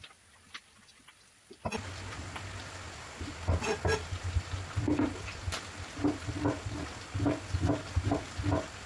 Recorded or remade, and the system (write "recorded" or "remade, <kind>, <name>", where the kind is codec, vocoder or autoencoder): recorded